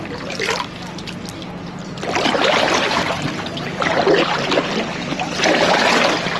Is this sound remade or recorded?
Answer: recorded